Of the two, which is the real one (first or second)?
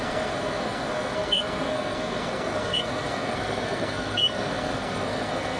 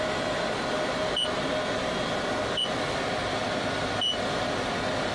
second